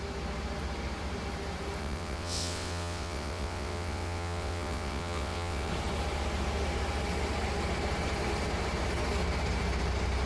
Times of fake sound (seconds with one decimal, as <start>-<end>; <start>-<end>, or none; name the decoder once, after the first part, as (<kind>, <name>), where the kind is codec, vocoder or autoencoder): 1.8-5.7 (vocoder, WaveNeXt)